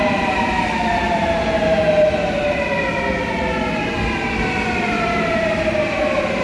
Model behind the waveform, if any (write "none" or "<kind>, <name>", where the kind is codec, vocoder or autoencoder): none